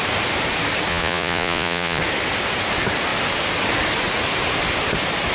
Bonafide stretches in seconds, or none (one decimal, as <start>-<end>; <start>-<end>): 0.0-0.9; 2.0-5.3